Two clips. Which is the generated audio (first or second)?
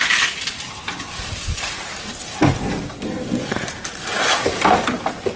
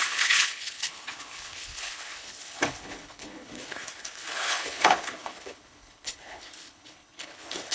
second